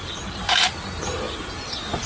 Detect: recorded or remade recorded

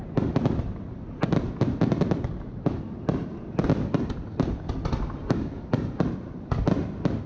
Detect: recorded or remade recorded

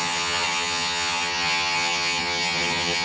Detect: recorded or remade remade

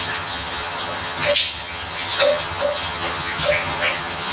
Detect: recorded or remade remade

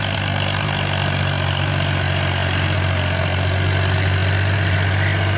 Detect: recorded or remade recorded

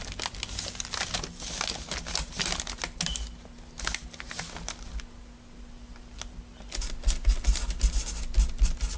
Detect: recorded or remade recorded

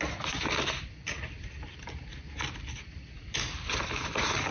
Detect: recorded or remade recorded